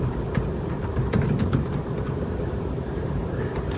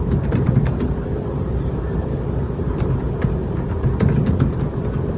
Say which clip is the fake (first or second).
first